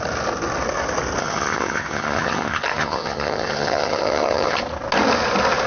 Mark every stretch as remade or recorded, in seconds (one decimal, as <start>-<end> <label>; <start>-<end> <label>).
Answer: 0.0-1.2 recorded; 1.2-4.6 remade; 4.6-5.7 recorded